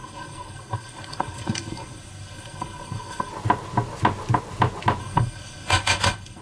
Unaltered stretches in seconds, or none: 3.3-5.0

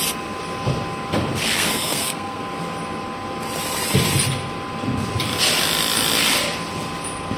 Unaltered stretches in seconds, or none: 0.0-1.4; 2.4-7.4

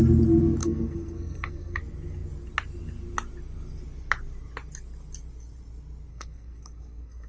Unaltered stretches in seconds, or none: 0.0-0.6; 1.8-6.1

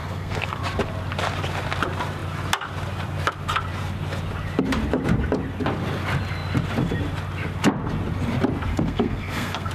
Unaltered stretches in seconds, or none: 0.6-8.7

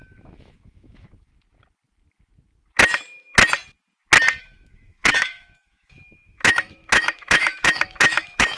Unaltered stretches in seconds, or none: 1.3-4.4

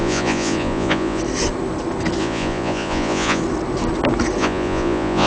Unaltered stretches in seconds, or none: 1.2-2.2; 3.4-4.4

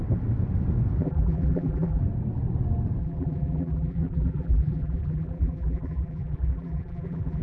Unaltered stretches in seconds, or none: 0.0-1.0; 2.0-3.0